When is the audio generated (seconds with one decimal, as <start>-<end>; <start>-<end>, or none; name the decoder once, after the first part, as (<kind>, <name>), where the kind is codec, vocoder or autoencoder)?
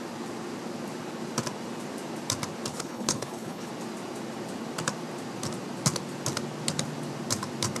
2.7-3.7 (codec, HILCodec)